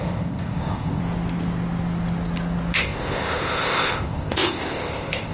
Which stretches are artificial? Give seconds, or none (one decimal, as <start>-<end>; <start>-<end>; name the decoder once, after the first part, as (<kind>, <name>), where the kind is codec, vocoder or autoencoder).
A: 0.0-1.0 (codec, ZipCodec); 2.8-5.3